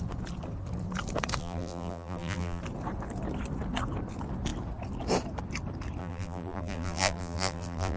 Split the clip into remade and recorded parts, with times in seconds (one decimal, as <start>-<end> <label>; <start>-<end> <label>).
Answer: 0.0-1.4 recorded; 1.4-2.6 remade; 2.6-6.0 recorded; 6.0-8.0 remade